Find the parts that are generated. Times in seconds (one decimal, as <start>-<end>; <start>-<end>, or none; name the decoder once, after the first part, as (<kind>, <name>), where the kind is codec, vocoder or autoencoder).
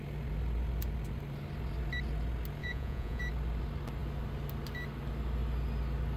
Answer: 2.6-3.2 (vocoder, Vocos)